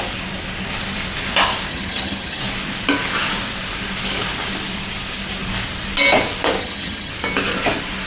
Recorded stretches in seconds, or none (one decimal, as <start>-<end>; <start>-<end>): 0.0-1.7; 2.4-6.6; 7.1-8.1